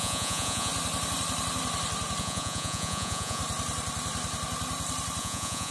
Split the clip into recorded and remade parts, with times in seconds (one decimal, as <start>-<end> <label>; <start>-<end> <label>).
0.0-0.7 remade; 0.7-2.2 recorded; 2.2-3.4 remade; 3.4-5.2 recorded; 5.2-5.7 remade

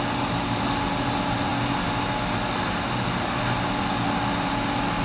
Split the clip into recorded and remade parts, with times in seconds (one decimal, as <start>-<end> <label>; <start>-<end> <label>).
0.0-5.0 recorded

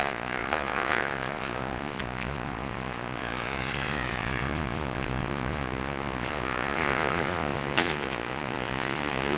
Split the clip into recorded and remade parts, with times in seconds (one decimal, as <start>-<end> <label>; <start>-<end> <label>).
0.0-9.4 remade

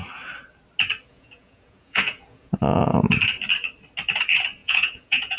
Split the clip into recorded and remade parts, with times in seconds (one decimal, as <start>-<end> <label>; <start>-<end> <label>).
0.0-1.1 recorded; 1.1-2.5 remade; 2.5-4.6 recorded; 4.6-5.4 remade

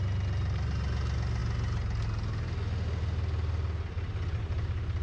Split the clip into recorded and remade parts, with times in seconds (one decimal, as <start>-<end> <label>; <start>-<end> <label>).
0.0-5.0 recorded

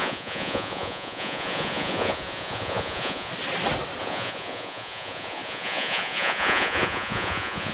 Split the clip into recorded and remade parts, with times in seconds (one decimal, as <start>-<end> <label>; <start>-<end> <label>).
0.0-3.3 remade; 3.3-4.0 recorded; 4.0-7.7 remade

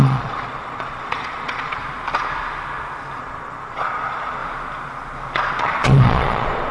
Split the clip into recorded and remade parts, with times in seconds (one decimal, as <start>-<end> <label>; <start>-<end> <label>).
0.0-1.8 remade; 1.8-3.2 recorded; 3.2-4.4 remade; 4.4-5.6 recorded; 5.6-6.7 remade

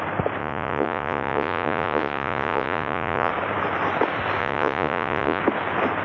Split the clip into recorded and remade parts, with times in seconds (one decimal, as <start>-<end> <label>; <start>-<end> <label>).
0.0-0.4 recorded; 0.4-3.3 remade; 3.3-4.4 recorded; 4.4-5.4 remade; 5.4-6.0 recorded